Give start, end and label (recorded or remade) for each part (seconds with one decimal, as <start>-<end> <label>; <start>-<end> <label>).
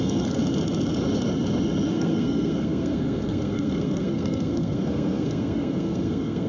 0.0-0.4 remade; 0.4-1.9 recorded; 1.9-6.5 remade